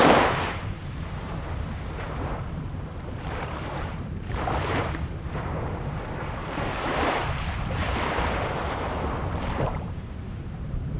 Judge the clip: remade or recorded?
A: remade